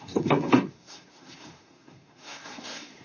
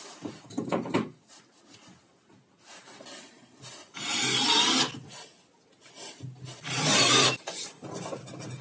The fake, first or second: first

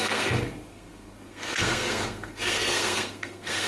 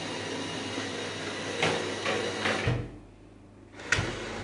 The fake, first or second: first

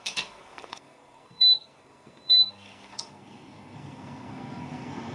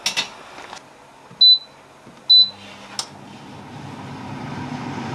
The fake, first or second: first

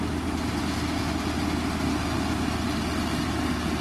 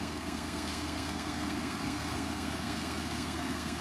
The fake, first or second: second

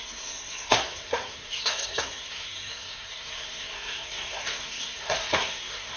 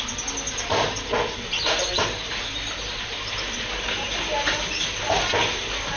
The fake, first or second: first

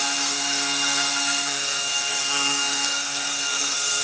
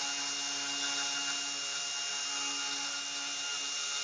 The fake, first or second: first